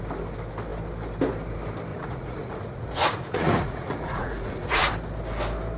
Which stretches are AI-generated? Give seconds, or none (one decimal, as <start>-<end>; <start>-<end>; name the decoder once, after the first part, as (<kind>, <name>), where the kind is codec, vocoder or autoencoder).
1.9-4.9 (vocoder, Vocos)